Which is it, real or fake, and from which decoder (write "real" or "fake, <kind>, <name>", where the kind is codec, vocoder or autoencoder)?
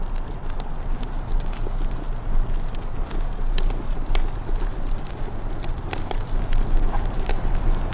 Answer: real